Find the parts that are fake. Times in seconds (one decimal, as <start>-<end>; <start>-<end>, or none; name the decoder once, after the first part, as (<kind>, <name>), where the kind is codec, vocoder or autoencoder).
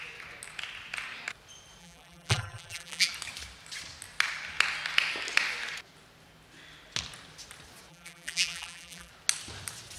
1.8-3.1 (vocoder, BigVGAN v2); 7.9-9.1